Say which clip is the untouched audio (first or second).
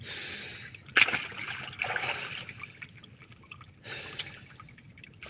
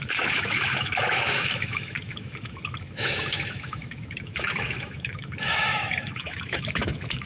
first